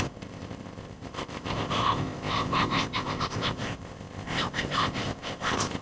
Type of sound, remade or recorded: remade